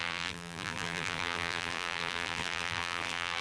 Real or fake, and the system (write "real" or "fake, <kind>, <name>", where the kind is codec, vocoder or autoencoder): fake, vocoder, BigVGAN v2